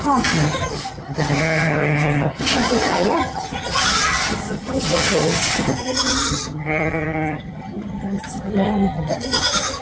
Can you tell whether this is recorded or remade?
remade